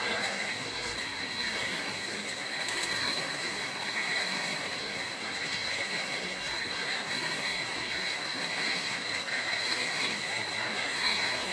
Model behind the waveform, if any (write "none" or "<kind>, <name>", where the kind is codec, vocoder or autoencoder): codec, SNAC